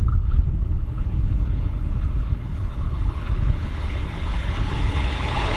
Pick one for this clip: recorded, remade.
remade